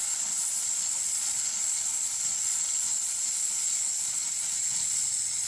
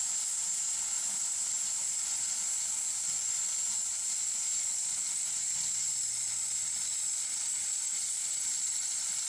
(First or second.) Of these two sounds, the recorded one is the second